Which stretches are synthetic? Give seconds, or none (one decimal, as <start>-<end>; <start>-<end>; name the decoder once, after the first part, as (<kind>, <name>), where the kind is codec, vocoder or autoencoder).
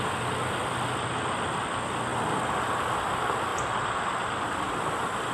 none